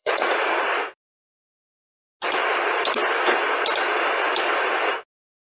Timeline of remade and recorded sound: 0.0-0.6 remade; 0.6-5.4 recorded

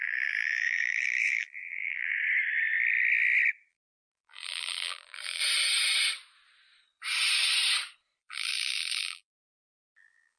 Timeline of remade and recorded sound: 0.0-2.2 remade; 2.2-3.7 recorded; 3.7-5.4 remade; 5.4-8.2 recorded; 8.2-10.4 remade

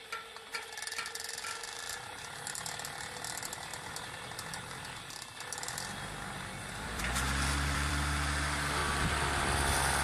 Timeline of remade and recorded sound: 0.0-8.8 remade; 8.8-9.4 recorded; 9.4-10.0 remade

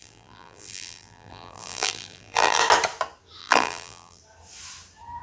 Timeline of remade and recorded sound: 0.0-2.6 remade; 2.6-3.4 recorded; 3.4-4.2 remade; 4.2-5.2 recorded

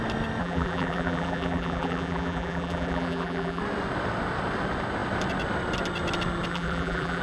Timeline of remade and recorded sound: 0.0-0.4 recorded; 0.4-3.6 remade; 3.6-6.5 recorded; 6.5-7.2 remade

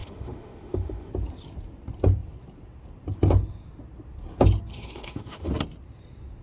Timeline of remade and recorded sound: 0.0-1.1 remade; 1.1-4.7 recorded; 4.7-5.5 remade; 5.5-6.4 recorded

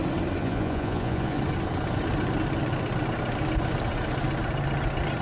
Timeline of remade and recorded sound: 0.0-0.4 recorded; 0.4-1.4 remade; 1.4-5.2 recorded